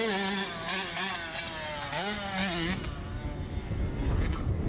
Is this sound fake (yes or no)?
no